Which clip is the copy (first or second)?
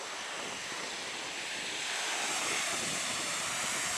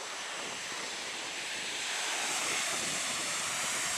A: second